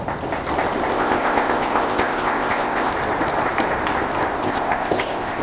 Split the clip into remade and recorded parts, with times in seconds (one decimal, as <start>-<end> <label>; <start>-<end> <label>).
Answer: 0.0-0.9 recorded; 0.9-2.9 remade; 2.9-4.4 recorded; 4.4-5.4 remade

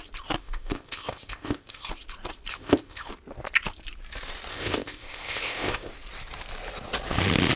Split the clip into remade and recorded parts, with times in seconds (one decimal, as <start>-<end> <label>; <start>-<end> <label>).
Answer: 0.0-0.4 recorded; 0.4-1.9 remade; 1.9-2.5 recorded; 2.5-3.1 remade; 3.1-4.5 recorded; 4.5-5.9 remade; 5.9-7.6 recorded

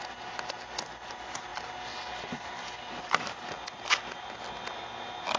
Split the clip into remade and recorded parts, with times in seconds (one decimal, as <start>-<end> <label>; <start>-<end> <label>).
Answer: 0.0-5.4 recorded